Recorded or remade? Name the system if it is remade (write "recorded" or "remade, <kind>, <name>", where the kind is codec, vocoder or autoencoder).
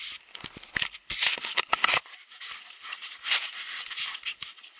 recorded